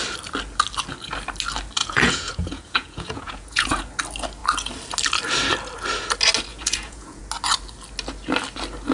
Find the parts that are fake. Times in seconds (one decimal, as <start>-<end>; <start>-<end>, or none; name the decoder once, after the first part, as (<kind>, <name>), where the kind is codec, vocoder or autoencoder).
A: 1.8-3.8 (vocoder, Vocos); 6.5-7.2